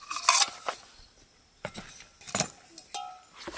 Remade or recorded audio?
recorded